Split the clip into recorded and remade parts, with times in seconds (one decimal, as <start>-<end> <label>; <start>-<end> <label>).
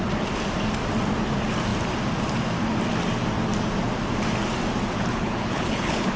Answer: 0.0-5.1 recorded; 5.1-6.2 remade